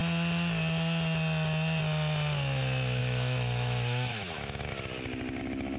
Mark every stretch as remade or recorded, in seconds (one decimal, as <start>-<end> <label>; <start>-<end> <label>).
0.0-3.0 recorded; 3.0-4.7 remade; 4.7-5.8 recorded